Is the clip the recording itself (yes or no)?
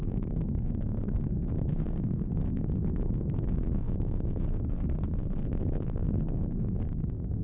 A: no